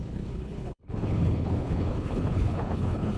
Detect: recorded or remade remade